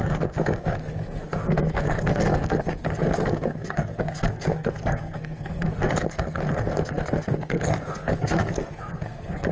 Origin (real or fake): fake